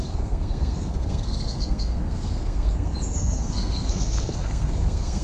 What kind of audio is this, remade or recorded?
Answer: remade